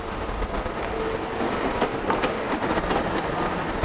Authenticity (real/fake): real